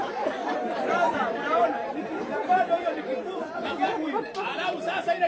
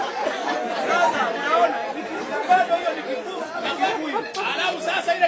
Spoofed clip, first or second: first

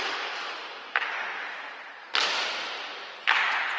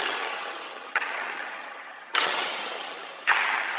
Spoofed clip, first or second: second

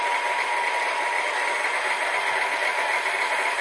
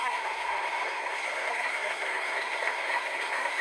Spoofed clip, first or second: second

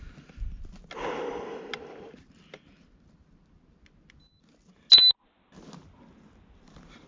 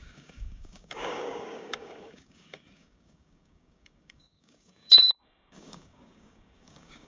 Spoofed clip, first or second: second